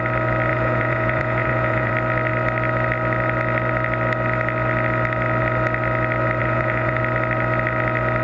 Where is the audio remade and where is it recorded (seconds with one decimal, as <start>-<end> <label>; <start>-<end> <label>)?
0.0-0.5 recorded; 0.5-1.9 remade; 1.9-6.4 recorded; 6.4-7.0 remade; 7.0-8.2 recorded

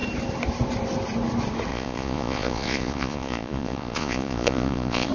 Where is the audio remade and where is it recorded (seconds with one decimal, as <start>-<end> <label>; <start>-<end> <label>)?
0.0-1.7 recorded; 1.7-5.1 remade

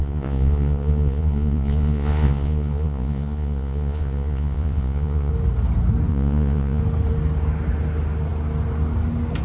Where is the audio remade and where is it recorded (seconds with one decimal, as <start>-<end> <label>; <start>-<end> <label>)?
0.0-5.3 remade; 5.3-6.1 recorded; 6.1-6.8 remade; 6.8-9.4 recorded